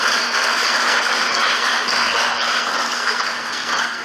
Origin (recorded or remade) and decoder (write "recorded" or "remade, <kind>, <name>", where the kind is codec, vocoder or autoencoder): remade, codec, SNAC